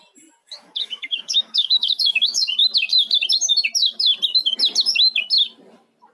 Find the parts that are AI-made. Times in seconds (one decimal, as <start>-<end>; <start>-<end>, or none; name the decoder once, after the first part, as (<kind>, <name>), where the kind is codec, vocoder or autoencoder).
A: 0.4-2.5 (codec, DAC)